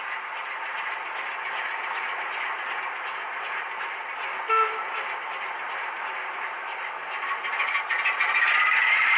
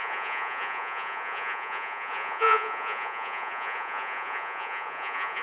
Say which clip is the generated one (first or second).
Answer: second